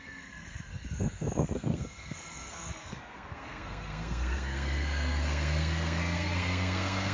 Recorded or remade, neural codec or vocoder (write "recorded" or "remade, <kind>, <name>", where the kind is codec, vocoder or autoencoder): remade, codec, SNAC